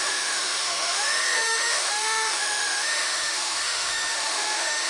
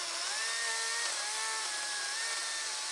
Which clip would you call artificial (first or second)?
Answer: first